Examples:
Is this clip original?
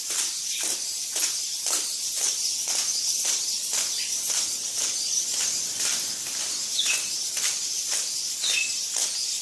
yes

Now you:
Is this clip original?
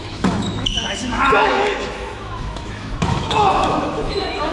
no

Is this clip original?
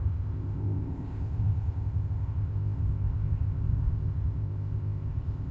no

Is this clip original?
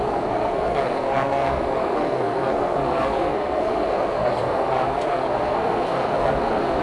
no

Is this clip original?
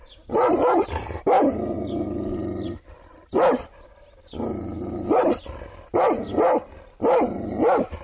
yes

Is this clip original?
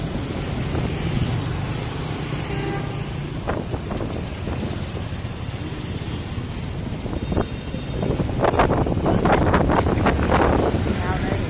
yes